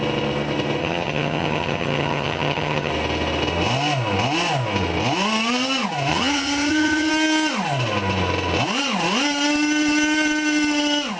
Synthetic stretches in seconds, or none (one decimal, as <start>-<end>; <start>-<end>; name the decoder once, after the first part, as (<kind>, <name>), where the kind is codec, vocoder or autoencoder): 0.8-2.9 (vocoder, HiFi-GAN); 6.1-7.1